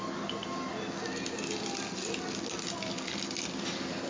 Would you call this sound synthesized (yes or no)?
no